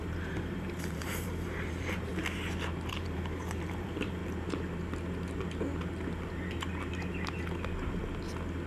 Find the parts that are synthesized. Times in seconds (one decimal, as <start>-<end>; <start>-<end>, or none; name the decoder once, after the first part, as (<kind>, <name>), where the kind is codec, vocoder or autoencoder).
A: 0.0-2.1 (vocoder, BigVGAN v2); 2.9-4.2